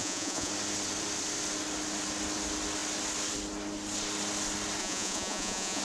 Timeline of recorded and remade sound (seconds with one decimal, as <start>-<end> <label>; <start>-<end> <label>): 0.0-0.5 remade; 0.5-4.8 recorded; 4.8-5.8 remade